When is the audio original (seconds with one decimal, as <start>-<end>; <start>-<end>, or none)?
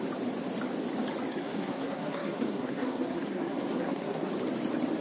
0.0-1.3; 4.3-5.0